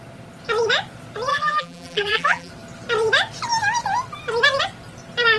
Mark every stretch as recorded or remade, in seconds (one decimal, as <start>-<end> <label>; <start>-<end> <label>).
0.0-1.3 recorded; 1.3-2.5 remade; 2.5-5.4 recorded